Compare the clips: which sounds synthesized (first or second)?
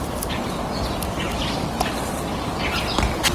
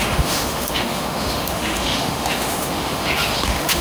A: second